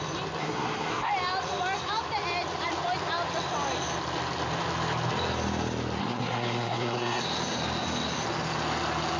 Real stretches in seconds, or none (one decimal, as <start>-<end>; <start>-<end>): 0.0-0.4; 1.1-6.0; 7.2-9.2